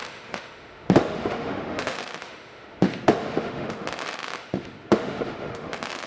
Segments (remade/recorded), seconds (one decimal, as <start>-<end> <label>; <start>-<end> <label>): 0.0-6.1 remade